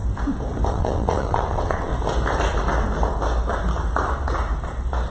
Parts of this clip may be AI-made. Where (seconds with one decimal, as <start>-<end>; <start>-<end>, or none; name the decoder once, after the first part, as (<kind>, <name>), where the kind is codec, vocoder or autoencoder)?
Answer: 0.7-1.9 (vocoder, WaveNeXt)